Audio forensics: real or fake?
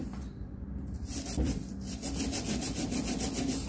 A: fake